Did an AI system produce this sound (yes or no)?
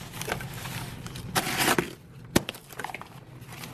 no